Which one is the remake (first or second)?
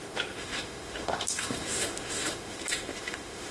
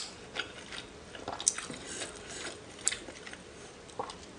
first